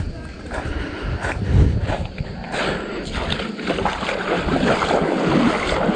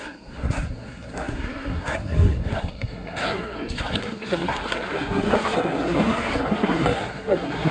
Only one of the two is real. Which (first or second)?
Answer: first